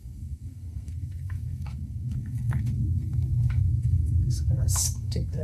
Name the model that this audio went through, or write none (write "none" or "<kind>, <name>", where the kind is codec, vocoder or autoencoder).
codec, SNAC